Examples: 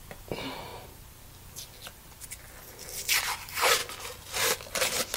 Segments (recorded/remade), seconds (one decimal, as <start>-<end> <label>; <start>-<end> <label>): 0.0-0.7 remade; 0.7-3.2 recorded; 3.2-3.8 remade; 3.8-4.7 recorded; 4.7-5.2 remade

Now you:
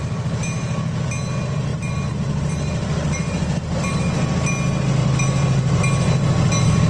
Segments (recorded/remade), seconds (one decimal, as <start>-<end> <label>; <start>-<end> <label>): 0.0-1.7 recorded; 1.7-4.0 remade; 4.0-5.0 recorded; 5.0-5.8 remade; 5.8-6.9 recorded

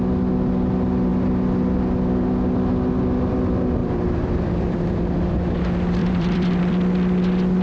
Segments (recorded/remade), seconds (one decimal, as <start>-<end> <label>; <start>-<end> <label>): 0.0-3.8 recorded; 3.8-4.8 remade; 4.8-6.0 recorded; 6.0-6.7 remade; 6.7-7.6 recorded